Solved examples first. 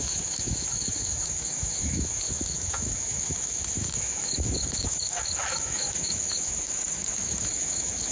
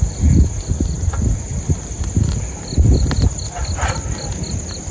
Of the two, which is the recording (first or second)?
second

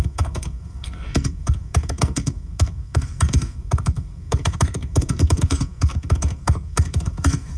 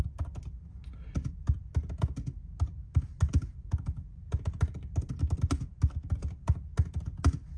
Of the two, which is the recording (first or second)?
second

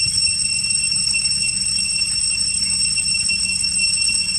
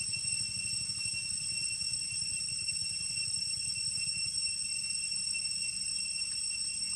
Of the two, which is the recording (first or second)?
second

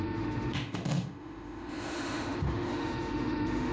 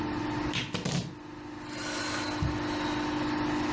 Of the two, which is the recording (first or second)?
second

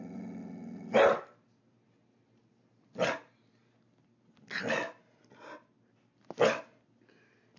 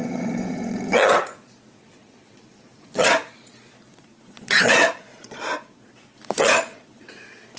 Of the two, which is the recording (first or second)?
first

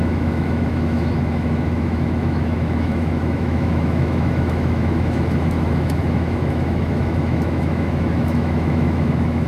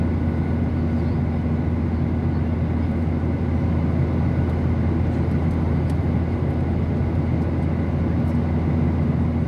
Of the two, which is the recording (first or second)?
second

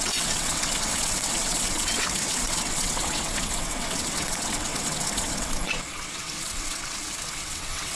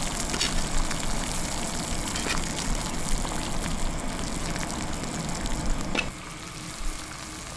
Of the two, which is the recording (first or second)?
second